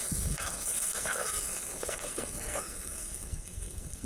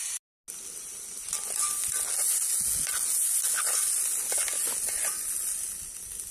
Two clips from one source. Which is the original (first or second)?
second